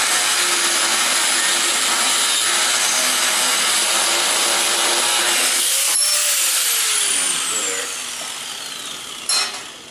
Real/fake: real